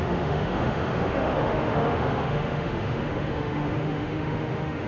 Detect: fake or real fake